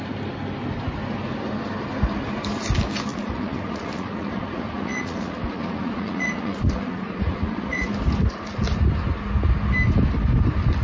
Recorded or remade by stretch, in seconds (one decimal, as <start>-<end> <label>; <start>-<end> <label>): 0.0-3.1 recorded; 3.1-7.9 remade; 7.9-10.8 recorded